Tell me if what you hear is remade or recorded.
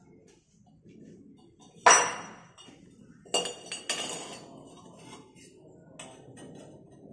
recorded